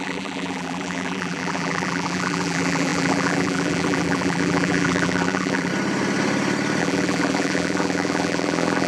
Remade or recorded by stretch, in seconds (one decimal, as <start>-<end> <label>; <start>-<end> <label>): 0.0-5.7 remade; 5.7-6.8 recorded; 6.8-8.9 remade